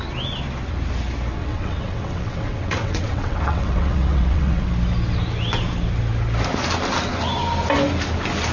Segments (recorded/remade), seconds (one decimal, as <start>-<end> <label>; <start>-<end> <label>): 0.0-1.4 recorded; 1.4-4.7 remade; 4.7-8.5 recorded